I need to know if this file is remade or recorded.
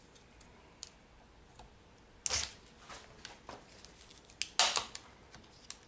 recorded